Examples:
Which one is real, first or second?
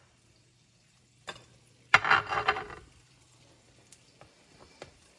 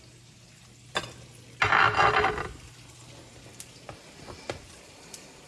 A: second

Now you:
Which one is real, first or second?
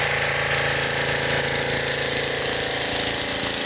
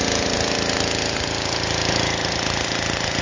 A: first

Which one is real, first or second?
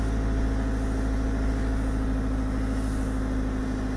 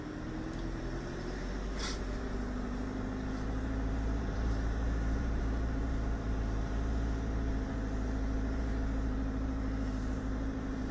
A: first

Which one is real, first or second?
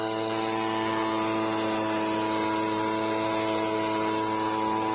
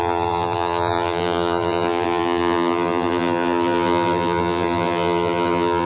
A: first